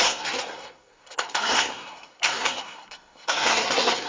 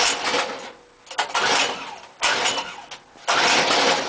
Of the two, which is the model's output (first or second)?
first